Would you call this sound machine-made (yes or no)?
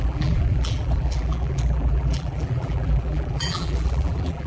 yes